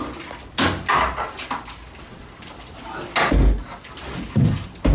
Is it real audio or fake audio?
real